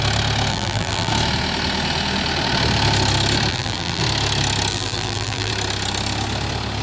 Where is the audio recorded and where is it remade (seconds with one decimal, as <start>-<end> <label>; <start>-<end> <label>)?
0.0-0.5 recorded; 0.5-1.1 remade; 1.1-3.5 recorded; 3.5-4.0 remade; 4.0-4.7 recorded; 4.7-5.5 remade; 5.5-6.8 recorded